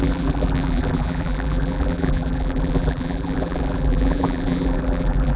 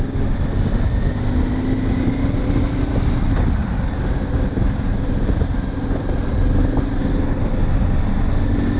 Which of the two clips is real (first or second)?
second